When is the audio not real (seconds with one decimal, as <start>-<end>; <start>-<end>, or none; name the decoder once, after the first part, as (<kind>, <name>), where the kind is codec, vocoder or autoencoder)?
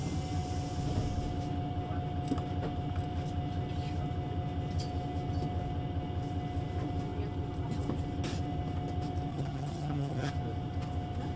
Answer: 9.3-10.3 (vocoder, HiFi-GAN)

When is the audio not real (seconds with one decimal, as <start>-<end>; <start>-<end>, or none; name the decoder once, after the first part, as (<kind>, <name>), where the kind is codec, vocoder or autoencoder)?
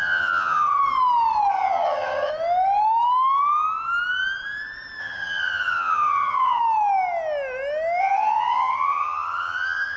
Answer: 0.0-0.8 (vocoder, HiFi-GAN); 1.5-2.3; 5.0-6.6; 8.0-10.0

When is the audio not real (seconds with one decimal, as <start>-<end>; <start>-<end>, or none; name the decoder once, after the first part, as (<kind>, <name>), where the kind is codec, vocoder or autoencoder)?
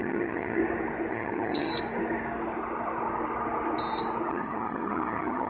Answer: 0.0-0.6 (vocoder, HiFi-GAN); 1.1-1.7; 4.3-5.5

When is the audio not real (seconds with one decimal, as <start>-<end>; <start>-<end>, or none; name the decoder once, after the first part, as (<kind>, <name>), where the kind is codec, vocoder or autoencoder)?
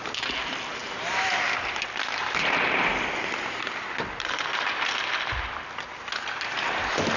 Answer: none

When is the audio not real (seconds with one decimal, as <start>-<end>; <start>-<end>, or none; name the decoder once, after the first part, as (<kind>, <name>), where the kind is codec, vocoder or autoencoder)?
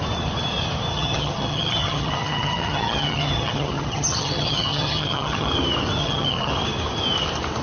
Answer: 0.9-5.5 (vocoder, HiFi-GAN); 6.0-6.5